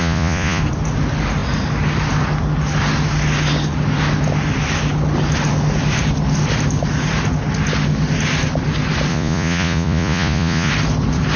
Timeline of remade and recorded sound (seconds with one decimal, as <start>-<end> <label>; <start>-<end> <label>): 0.0-0.6 remade; 0.6-9.1 recorded; 9.1-10.7 remade; 10.7-11.4 recorded